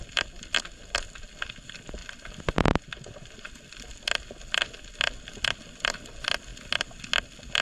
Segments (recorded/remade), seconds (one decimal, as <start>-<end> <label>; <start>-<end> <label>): 0.0-2.0 recorded; 2.0-3.7 remade; 3.7-7.6 recorded